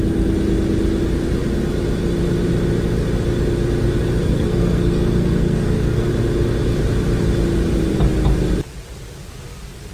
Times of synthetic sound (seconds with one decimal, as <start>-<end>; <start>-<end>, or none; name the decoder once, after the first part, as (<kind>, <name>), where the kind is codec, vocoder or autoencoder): 4.2-6.1 (codec, SNAC)